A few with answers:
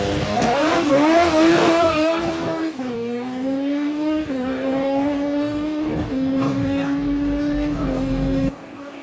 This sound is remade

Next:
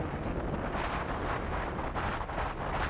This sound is recorded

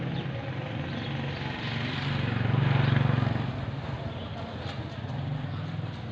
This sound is recorded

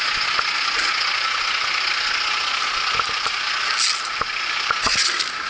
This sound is recorded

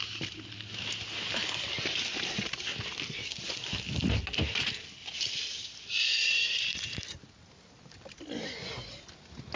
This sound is recorded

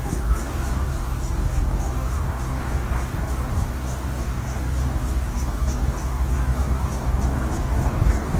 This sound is remade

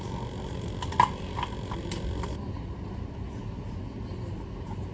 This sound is recorded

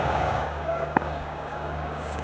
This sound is remade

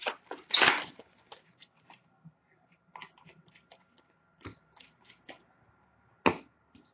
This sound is recorded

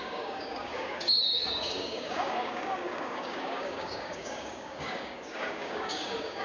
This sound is remade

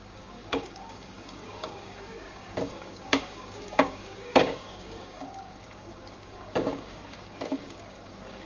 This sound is remade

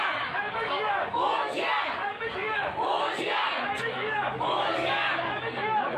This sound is remade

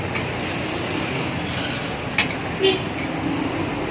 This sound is recorded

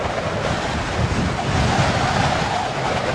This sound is recorded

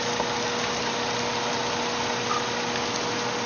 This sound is recorded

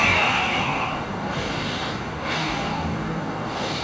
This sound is remade